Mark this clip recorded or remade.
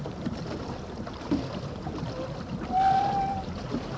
recorded